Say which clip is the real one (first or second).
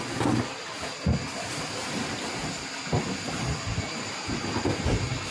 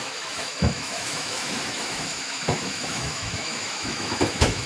first